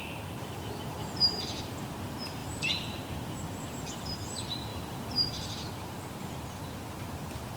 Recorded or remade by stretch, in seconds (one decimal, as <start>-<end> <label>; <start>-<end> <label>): 0.0-4.7 remade; 4.7-5.3 recorded; 5.3-7.6 remade